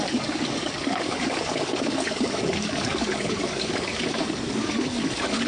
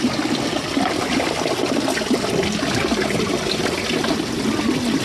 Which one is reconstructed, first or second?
first